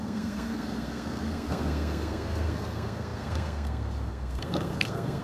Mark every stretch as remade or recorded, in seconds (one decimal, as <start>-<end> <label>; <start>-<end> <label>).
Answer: 0.0-5.2 remade